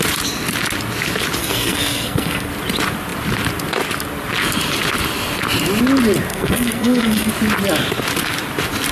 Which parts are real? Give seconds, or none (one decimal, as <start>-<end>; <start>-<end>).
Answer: 0.0-1.4; 2.5-6.3; 7.3-8.9